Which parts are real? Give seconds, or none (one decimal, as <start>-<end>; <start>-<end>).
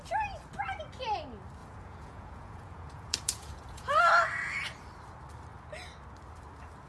0.0-1.6; 4.0-6.9